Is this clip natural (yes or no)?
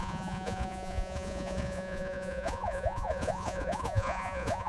no